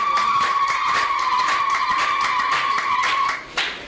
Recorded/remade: recorded